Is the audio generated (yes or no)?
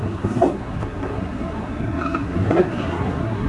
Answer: yes